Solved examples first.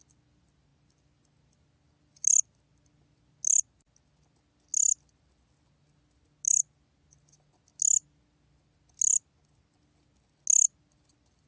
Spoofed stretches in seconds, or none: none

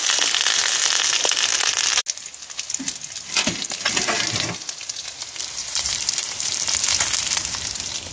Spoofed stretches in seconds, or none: 5.6-6.5 (vocoder, BigVGAN v2)

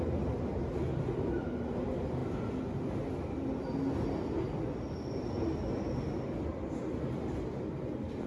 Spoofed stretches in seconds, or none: none

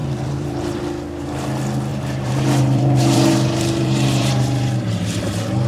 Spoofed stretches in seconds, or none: 0.0-0.8 (vocoder, BigVGAN v2); 1.9-5.3

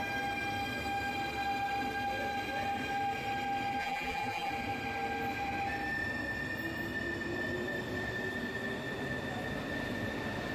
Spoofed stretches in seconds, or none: 3.8-4.5 (vocoder, BigVGAN v2)

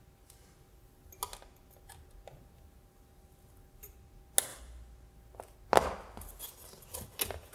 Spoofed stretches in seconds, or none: none

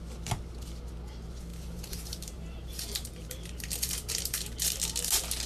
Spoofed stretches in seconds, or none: 1.5-4.8 (vocoder, BigVGAN v2)